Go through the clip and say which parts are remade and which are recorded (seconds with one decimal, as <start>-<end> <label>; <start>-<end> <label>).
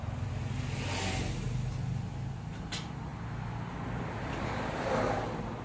0.0-5.6 recorded